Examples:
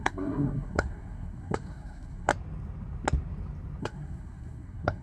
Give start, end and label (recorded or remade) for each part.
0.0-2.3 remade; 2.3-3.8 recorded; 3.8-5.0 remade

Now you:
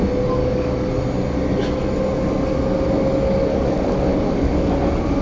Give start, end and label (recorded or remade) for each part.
0.0-0.4 recorded; 0.4-0.9 remade; 0.9-3.5 recorded; 3.5-4.7 remade; 4.7-5.2 recorded

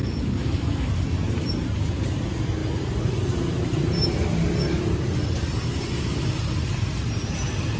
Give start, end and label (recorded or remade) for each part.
0.0-0.9 remade; 0.9-7.8 recorded

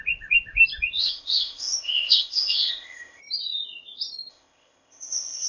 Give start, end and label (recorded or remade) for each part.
0.0-1.0 recorded; 1.0-3.2 remade; 3.2-4.3 recorded; 4.3-5.5 remade

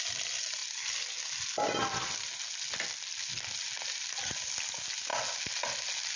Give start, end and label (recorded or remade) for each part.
0.0-6.2 recorded

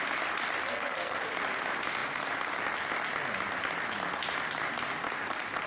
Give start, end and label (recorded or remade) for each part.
0.0-0.7 recorded; 0.7-1.2 remade; 1.2-5.7 recorded

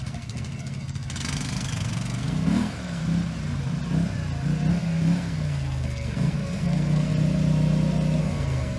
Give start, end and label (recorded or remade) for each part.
0.0-3.0 remade; 3.0-4.7 recorded; 4.7-7.1 remade; 7.1-8.2 recorded; 8.2-8.8 remade